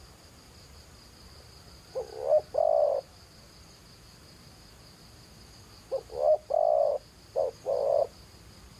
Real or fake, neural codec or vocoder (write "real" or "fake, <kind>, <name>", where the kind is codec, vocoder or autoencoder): real